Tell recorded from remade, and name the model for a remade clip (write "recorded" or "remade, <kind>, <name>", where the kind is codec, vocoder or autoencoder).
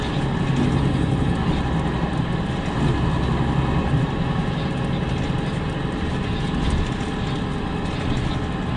recorded